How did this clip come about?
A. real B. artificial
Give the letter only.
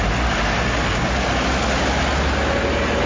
A